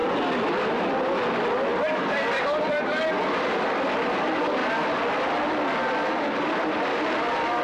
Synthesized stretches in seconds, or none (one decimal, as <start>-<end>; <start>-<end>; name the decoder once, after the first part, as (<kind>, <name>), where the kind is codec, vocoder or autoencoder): 0.0-4.6 (vocoder, BigVGAN v2); 6.4-7.6